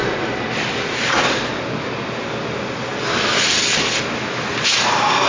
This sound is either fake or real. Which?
real